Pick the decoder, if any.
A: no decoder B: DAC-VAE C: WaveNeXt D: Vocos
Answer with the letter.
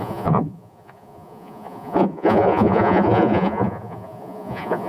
D